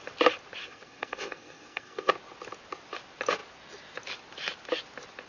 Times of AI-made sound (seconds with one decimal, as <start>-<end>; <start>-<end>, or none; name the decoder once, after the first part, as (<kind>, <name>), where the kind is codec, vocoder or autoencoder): 0.6-2.1 (codec, SNAC)